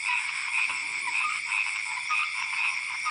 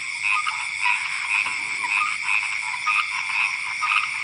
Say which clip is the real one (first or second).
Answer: second